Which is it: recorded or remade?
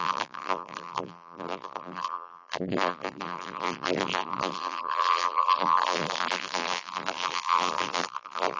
remade